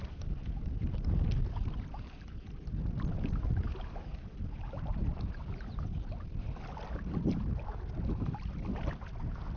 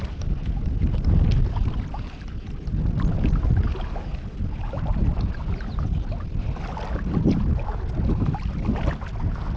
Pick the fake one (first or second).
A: first